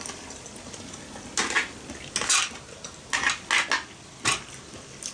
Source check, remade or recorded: recorded